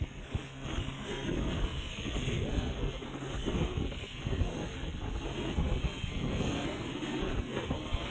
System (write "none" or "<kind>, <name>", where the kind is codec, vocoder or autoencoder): codec, SNAC